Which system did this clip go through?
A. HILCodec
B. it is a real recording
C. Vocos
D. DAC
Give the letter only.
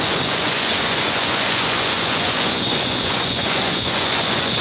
C